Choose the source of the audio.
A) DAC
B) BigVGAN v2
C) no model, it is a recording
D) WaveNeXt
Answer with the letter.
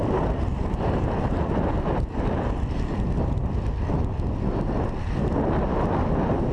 C